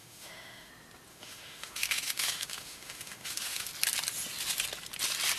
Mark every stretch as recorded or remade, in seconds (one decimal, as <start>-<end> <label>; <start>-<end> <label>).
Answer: 0.0-0.7 remade; 0.7-1.1 recorded; 1.1-3.7 remade; 3.7-5.4 recorded